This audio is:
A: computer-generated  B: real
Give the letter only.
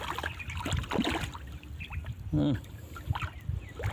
B